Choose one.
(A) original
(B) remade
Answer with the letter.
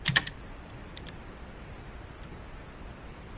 A